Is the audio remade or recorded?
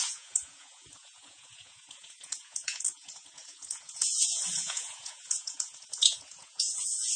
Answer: remade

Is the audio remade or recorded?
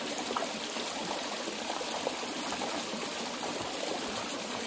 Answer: recorded